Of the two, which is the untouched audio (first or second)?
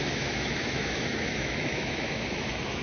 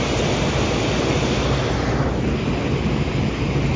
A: second